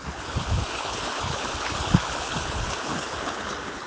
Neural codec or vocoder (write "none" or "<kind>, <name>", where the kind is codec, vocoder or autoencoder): codec, HILCodec